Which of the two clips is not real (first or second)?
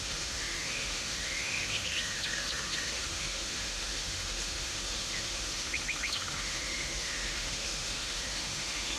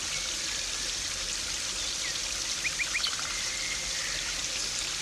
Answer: first